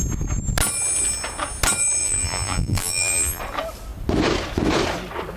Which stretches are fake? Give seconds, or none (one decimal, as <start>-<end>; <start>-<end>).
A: 2.0-3.4